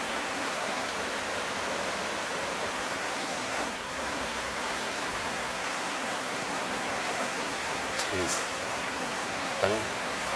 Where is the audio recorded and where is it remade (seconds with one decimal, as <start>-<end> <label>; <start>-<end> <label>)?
0.0-0.9 remade; 0.9-2.7 recorded; 2.7-10.4 remade